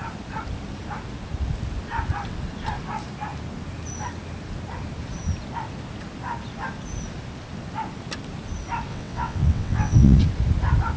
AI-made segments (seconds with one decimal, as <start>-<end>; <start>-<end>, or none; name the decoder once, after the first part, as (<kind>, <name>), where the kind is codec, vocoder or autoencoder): 8.9-10.2 (vocoder, WaveNeXt)